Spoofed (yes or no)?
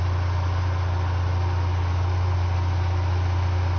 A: no